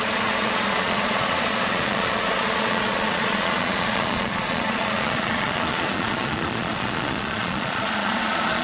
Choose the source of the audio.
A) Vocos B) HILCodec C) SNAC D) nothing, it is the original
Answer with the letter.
A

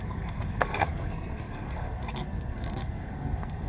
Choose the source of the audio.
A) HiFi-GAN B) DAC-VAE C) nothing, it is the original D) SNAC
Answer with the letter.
D